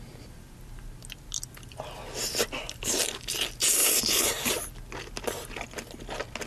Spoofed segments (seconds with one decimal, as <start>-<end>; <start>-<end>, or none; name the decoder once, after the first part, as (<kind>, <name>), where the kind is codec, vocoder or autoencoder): 3.8-4.5 (vocoder, BigVGAN v2)